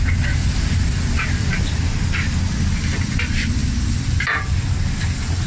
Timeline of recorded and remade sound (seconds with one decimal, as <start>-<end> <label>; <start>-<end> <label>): 0.0-5.5 recorded